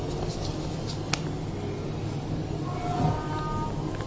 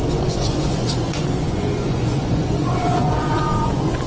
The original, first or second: first